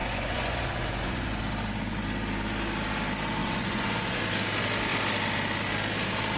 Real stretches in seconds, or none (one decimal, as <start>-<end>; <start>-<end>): 1.4-3.4; 4.2-6.4